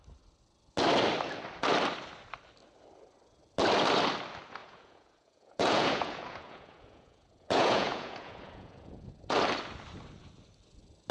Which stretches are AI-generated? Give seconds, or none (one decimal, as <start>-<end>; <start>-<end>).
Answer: 4.6-9.1